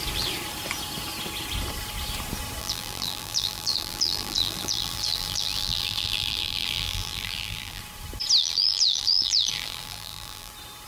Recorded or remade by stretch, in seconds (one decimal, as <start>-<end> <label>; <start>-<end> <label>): 0.0-2.6 recorded; 2.6-7.8 remade; 7.8-8.4 recorded; 8.4-10.5 remade; 10.5-10.9 recorded